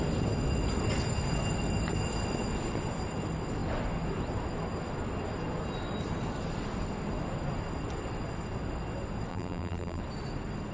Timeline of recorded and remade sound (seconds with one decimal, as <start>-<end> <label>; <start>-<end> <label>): 0.0-9.3 recorded; 9.3-10.0 remade; 10.0-10.7 recorded